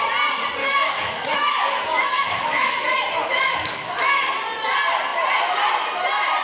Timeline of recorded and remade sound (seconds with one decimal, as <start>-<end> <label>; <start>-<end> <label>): 0.0-0.6 recorded; 0.6-4.3 remade; 4.3-6.4 recorded